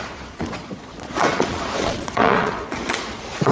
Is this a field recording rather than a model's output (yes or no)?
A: no